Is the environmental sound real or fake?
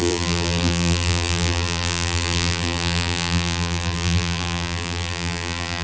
fake